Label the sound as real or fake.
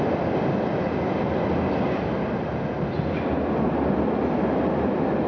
real